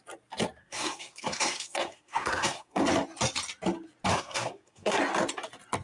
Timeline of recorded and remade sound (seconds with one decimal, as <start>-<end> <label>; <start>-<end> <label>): 0.0-0.6 recorded; 0.6-2.8 remade; 2.8-4.1 recorded; 4.1-5.0 remade; 5.0-5.8 recorded